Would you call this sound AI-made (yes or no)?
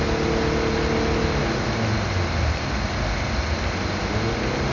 no